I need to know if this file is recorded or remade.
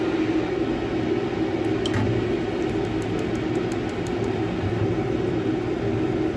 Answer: recorded